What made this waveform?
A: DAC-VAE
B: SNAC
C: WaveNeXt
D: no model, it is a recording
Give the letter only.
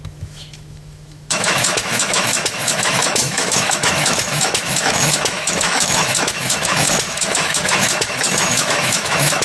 A